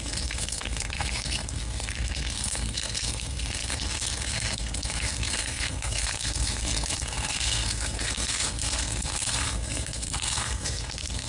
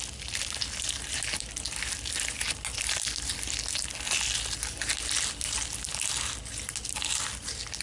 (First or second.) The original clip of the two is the second